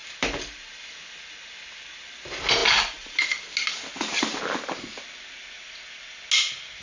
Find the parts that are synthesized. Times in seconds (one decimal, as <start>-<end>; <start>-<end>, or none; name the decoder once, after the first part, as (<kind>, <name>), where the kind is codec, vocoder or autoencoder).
0.0-1.0 (vocoder, BigVGAN v2)